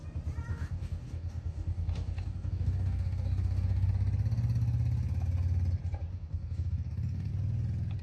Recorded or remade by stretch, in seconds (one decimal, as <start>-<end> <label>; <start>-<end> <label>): 0.0-0.5 recorded; 0.5-3.9 remade; 3.9-6.1 recorded; 6.1-7.3 remade; 7.3-8.0 recorded

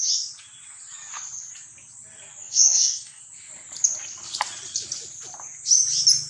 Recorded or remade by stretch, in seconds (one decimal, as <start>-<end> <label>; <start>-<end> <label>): 0.0-2.4 recorded; 2.4-3.2 remade; 3.2-6.3 recorded

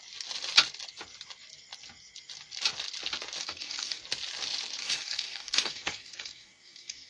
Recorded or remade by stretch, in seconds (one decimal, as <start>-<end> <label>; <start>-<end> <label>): 0.0-3.4 recorded; 3.4-4.0 remade; 4.0-4.8 recorded; 4.8-7.1 remade

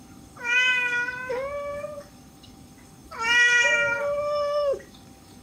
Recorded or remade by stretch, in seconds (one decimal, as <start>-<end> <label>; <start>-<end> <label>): 0.0-5.4 remade